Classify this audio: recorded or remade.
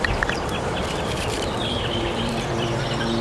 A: remade